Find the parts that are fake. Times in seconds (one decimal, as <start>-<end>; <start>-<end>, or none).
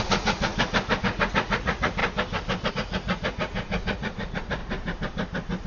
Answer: 0.0-0.5; 1.0-2.0; 2.7-4.6